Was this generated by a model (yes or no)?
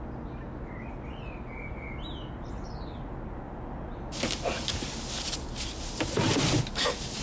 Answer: no